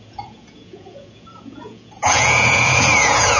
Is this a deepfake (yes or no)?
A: yes